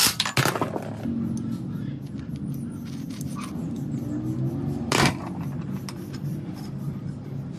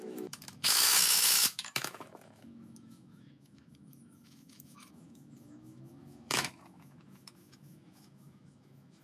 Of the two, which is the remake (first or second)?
second